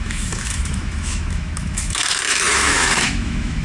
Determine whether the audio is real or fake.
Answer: fake